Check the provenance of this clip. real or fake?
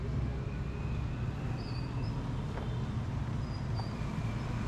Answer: real